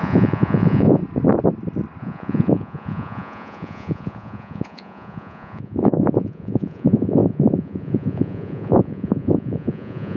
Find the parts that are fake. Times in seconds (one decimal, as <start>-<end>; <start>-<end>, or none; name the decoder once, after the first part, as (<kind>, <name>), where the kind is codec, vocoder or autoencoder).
0.0-1.0 (vocoder, Vocos); 2.0-10.2